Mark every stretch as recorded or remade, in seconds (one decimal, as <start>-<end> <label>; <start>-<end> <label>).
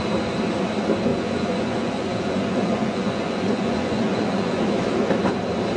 0.0-1.1 recorded; 1.1-4.6 remade; 4.6-5.8 recorded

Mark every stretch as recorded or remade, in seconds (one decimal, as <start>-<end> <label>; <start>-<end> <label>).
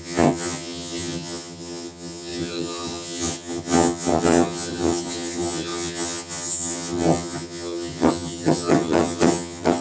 0.0-9.8 remade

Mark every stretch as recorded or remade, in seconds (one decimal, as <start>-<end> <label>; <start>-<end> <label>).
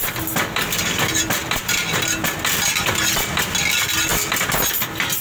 0.0-5.2 recorded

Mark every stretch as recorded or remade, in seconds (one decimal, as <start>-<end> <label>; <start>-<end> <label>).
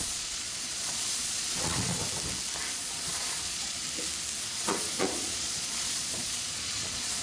0.0-2.0 remade; 2.0-2.7 recorded; 2.7-3.8 remade; 3.8-4.5 recorded; 4.5-7.2 remade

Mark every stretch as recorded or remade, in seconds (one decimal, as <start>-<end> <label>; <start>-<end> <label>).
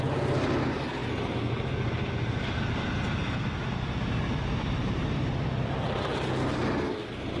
0.0-4.8 recorded; 4.8-6.6 remade; 6.6-7.4 recorded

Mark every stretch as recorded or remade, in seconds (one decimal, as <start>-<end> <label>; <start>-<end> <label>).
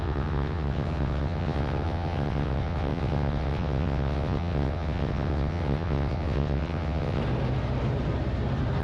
0.0-7.2 remade; 7.2-8.8 recorded